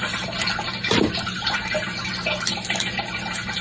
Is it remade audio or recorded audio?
remade